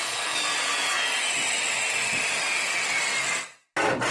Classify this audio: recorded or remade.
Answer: recorded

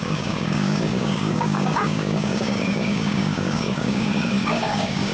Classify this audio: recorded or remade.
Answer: remade